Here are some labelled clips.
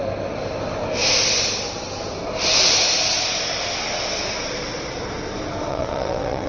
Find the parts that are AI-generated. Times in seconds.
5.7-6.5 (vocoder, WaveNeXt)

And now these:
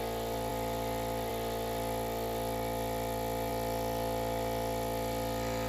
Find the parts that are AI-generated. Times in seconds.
none

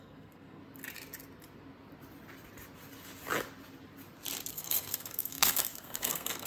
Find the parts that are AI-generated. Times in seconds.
0.0-0.6 (codec, SNAC); 4.5-6.5

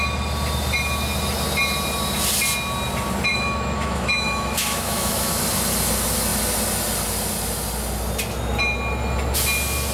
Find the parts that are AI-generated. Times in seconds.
3.3-5.4 (autoencoder, DAC-VAE)

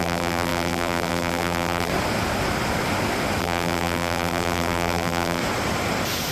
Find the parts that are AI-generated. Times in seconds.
0.0-1.9 (vocoder, BigVGAN v2); 3.4-5.4

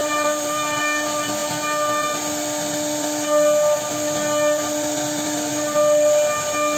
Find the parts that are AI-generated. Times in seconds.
0.0-0.8 (vocoder, BigVGAN v2)

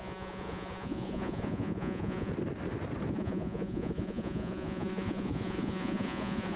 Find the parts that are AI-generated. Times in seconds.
0.0-2.3 (vocoder, Vocos); 3.1-6.6

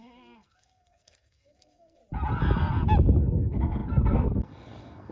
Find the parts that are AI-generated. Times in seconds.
0.0-2.0 (codec, SNAC); 3.2-5.1